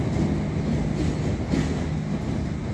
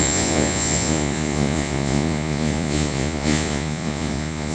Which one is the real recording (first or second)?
first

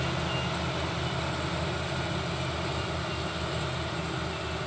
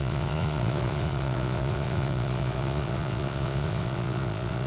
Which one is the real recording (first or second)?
first